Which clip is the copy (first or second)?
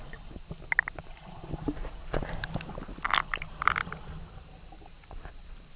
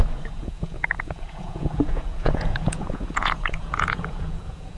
second